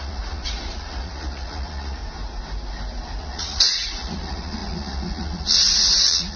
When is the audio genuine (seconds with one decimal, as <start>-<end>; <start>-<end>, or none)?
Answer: 2.0-3.2